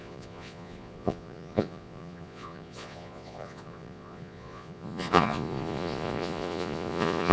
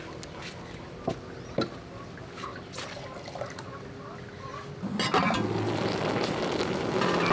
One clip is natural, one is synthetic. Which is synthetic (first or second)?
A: first